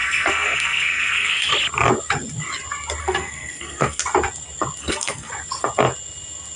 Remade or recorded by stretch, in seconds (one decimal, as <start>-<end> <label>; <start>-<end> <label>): 0.0-1.5 remade; 1.5-3.0 recorded; 3.0-4.0 remade; 4.0-4.8 recorded; 4.8-5.3 remade; 5.3-6.6 recorded